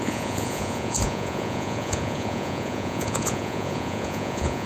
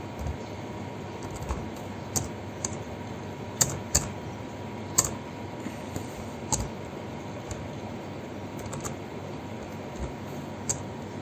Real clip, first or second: second